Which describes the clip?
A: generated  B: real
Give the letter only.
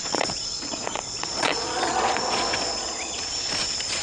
A